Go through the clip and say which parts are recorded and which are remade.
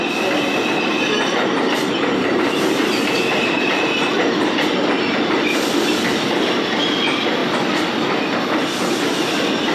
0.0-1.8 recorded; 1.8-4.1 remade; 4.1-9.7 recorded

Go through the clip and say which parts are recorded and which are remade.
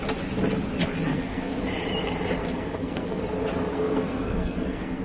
0.0-1.1 recorded; 1.1-1.6 remade; 1.6-2.4 recorded; 2.4-3.2 remade; 3.2-3.7 recorded; 3.7-5.0 remade